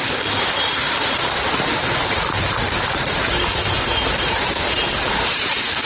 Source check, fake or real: fake